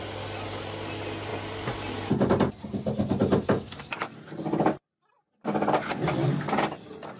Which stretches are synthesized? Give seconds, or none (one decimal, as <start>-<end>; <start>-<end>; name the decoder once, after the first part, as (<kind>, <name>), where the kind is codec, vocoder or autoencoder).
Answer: none